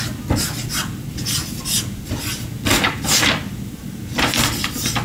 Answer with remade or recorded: recorded